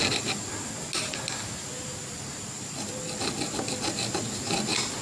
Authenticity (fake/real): real